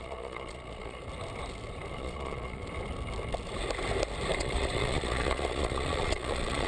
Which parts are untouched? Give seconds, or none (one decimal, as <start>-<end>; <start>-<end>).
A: 1.0-1.9; 2.6-4.4